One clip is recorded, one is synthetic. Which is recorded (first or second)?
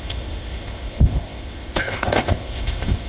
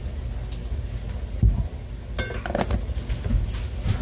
second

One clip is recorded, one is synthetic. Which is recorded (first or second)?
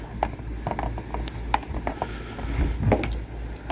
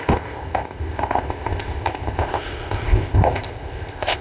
first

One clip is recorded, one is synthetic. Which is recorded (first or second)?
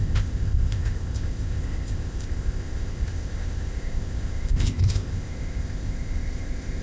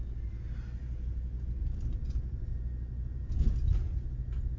second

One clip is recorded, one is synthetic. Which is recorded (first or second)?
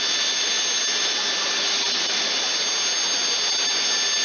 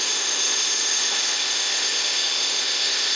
first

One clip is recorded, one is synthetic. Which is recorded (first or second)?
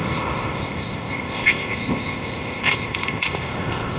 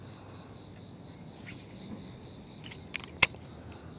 second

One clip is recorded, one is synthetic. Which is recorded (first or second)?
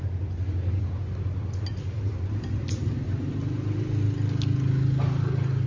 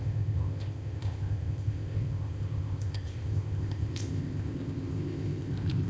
first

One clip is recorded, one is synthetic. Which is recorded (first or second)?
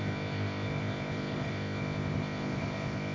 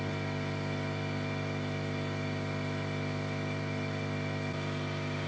second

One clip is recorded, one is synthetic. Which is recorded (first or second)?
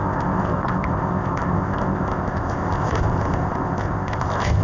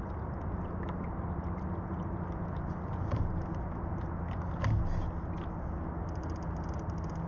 second